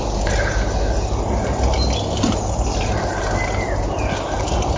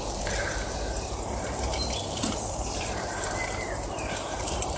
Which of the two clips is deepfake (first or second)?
second